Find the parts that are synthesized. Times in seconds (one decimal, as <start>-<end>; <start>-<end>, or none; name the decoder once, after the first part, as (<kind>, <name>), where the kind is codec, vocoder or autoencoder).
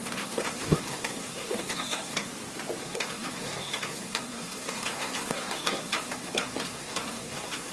0.0-2.3 (codec, SNAC); 2.8-7.7